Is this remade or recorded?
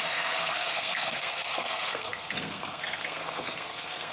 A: remade